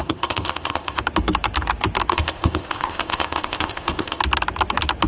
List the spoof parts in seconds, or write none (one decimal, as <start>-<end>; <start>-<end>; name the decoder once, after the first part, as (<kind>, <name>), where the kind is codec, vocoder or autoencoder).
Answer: 0.0-1.0 (codec, ZipCodec); 2.1-4.2